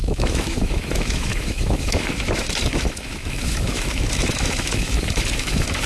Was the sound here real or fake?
fake